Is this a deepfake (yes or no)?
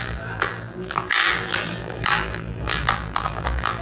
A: yes